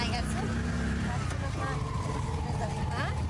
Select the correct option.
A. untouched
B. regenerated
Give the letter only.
A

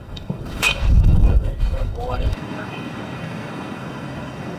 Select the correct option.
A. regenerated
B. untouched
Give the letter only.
A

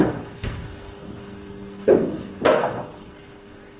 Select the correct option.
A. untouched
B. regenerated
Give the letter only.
B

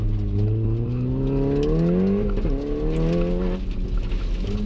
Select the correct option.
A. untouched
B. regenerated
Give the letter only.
A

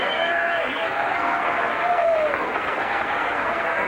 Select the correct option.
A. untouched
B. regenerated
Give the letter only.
B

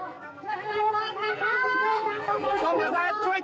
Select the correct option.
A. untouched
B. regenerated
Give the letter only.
B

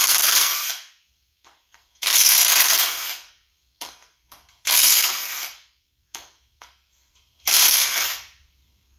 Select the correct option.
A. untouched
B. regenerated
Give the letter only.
B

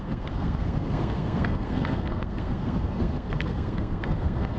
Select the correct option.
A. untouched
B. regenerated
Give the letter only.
B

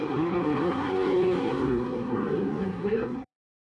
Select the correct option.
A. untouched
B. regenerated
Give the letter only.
B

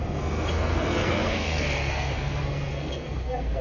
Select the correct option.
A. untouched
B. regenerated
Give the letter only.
B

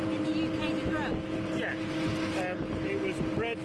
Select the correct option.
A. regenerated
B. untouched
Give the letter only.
B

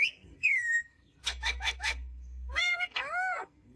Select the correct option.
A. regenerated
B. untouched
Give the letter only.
A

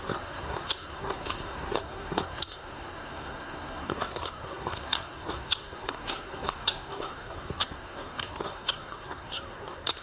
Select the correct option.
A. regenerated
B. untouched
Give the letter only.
A